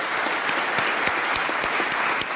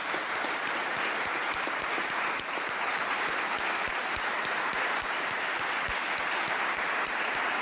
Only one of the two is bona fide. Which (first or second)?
first